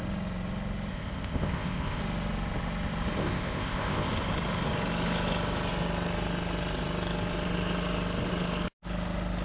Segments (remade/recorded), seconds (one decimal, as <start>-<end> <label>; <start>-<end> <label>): 0.0-0.9 recorded; 0.9-2.0 remade; 2.0-3.2 recorded; 3.2-4.1 remade; 4.1-9.4 recorded